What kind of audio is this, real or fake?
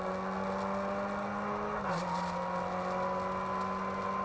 real